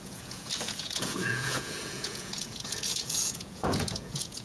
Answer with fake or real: fake